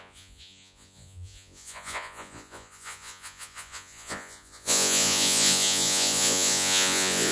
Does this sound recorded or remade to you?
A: remade